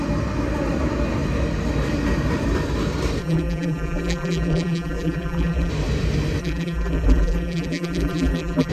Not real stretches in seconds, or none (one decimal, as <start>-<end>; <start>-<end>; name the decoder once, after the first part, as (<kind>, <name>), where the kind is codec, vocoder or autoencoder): 3.2-5.7 (vocoder, BigVGAN v2); 6.4-8.7